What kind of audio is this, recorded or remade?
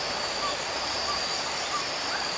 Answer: recorded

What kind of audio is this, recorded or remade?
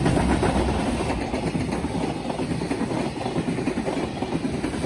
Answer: recorded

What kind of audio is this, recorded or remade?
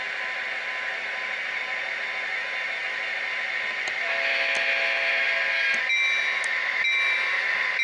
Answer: recorded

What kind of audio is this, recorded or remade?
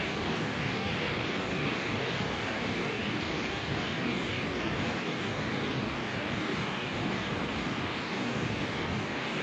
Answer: remade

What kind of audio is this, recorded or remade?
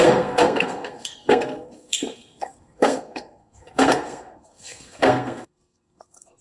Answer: remade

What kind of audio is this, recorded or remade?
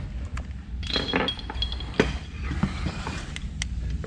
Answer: recorded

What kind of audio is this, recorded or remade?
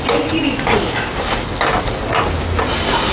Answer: recorded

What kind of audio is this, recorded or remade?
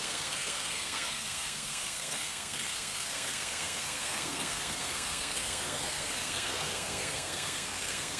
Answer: remade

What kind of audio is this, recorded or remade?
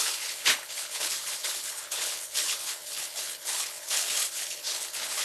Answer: remade